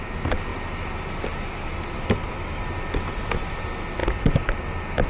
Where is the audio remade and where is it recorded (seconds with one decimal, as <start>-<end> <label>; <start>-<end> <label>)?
0.0-5.1 recorded